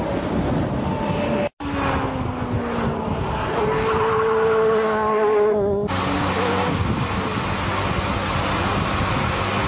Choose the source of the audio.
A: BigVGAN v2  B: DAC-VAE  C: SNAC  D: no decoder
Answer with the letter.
D